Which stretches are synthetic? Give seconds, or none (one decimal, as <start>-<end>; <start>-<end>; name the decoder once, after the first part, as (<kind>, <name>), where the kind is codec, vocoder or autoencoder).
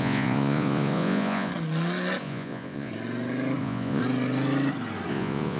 0.0-1.5 (vocoder, Vocos); 2.2-2.9; 3.6-4.0; 5.1-5.6